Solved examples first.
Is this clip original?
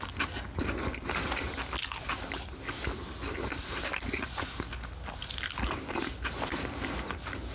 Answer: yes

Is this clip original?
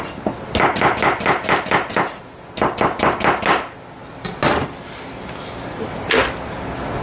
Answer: yes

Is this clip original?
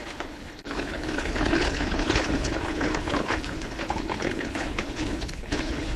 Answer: no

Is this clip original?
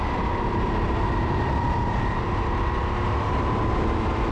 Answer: yes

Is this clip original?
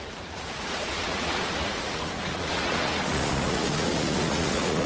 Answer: no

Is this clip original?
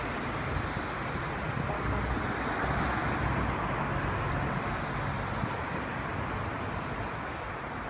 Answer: yes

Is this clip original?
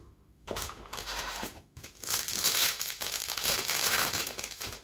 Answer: no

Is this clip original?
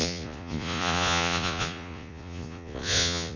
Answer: no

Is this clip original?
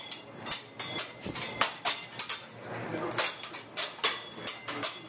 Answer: yes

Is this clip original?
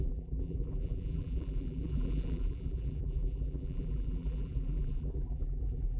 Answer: no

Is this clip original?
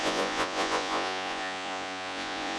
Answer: no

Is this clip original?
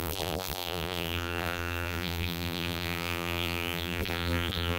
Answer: no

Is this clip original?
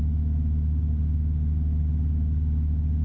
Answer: yes